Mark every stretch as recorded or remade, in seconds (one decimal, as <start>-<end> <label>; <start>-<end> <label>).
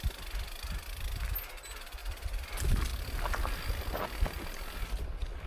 0.0-5.5 recorded